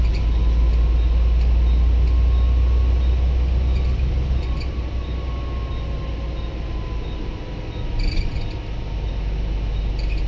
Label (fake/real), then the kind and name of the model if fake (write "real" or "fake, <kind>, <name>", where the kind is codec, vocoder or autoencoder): real